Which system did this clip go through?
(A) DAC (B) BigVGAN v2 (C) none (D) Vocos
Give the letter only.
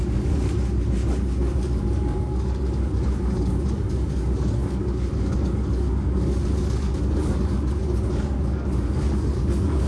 A